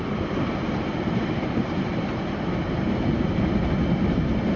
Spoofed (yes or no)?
no